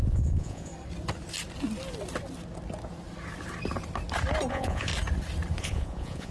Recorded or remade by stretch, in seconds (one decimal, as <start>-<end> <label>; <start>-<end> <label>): 0.0-0.7 remade; 0.7-4.5 recorded; 4.5-4.9 remade; 4.9-5.6 recorded; 5.6-6.3 remade